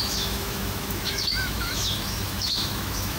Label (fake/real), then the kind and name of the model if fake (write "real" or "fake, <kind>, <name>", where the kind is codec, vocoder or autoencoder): fake, autoencoder, DAC-VAE